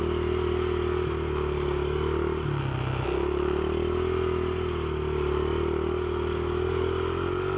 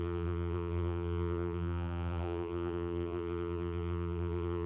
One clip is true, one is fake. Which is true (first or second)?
first